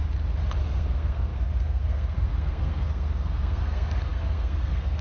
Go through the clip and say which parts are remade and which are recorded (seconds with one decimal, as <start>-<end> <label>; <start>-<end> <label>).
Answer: 0.0-0.6 recorded; 0.6-5.0 remade

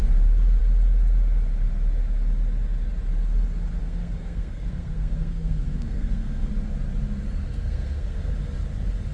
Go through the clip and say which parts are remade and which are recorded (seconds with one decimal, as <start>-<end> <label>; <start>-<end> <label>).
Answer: 0.0-3.8 recorded; 3.8-6.5 remade; 6.5-7.4 recorded; 7.4-8.3 remade; 8.3-9.1 recorded

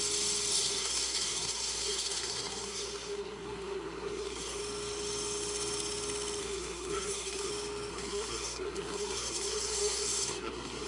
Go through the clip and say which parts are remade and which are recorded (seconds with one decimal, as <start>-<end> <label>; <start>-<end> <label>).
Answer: 0.0-0.5 recorded; 0.5-4.6 remade; 4.6-6.4 recorded; 6.4-7.5 remade; 7.5-7.9 recorded; 7.9-10.9 remade